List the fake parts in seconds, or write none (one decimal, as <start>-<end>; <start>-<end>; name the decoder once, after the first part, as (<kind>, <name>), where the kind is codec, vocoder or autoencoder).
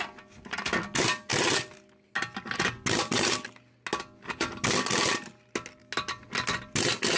none